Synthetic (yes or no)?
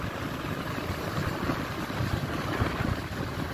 no